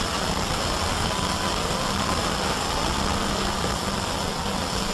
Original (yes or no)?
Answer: yes